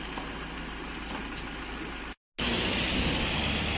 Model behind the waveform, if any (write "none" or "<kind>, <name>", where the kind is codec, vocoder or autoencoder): none